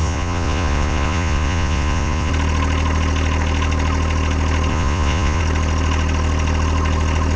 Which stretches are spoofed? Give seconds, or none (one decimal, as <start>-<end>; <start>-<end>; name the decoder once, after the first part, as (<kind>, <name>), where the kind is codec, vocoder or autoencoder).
0.0-2.3 (vocoder, Vocos); 4.7-5.4